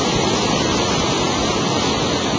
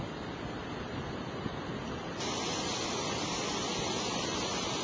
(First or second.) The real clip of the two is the first